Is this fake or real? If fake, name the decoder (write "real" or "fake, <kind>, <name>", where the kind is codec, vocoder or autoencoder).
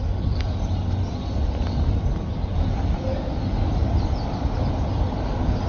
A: real